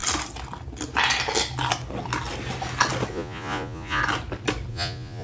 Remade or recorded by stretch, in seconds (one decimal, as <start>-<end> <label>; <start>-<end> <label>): 0.0-3.1 recorded; 3.1-4.0 remade; 4.0-4.7 recorded; 4.7-5.2 remade